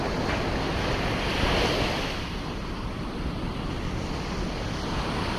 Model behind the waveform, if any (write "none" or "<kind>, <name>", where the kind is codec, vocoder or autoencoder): none